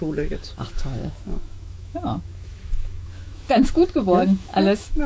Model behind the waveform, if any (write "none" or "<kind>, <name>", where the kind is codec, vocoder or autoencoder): autoencoder, DAC-VAE